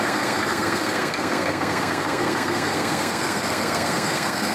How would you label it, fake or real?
fake